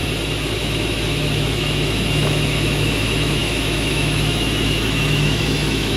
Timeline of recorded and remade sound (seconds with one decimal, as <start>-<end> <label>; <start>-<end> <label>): 0.0-0.6 recorded; 0.6-6.0 remade